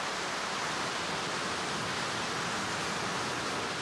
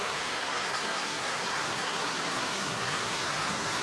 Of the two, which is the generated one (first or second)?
second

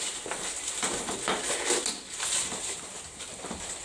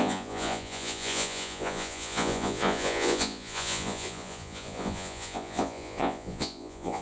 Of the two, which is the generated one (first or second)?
second